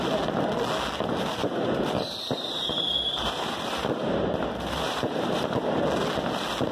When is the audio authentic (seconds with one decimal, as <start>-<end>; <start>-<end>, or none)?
0.0-1.4; 5.4-6.7